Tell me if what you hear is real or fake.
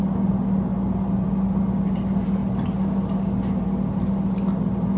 real